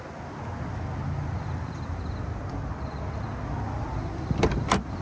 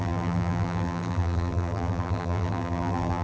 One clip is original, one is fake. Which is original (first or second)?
first